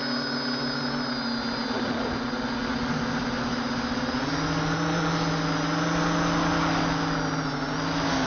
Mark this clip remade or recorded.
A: recorded